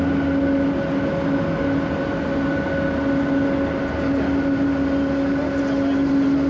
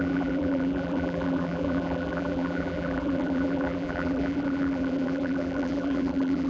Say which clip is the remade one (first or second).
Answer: second